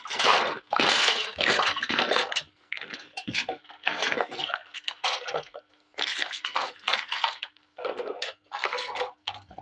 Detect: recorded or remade remade